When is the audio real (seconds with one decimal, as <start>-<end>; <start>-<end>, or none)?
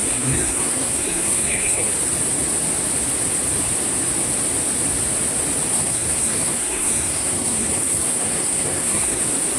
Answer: 1.9-5.7; 9.2-9.6